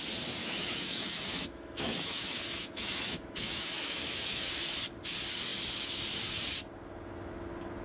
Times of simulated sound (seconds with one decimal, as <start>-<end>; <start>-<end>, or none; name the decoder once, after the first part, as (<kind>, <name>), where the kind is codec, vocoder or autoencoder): 0.4-4.5 (autoencoder, DAC-VAE)